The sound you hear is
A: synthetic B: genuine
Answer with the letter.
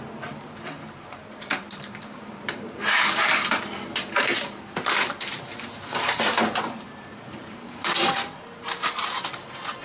A